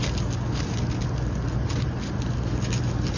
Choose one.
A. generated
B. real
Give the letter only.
B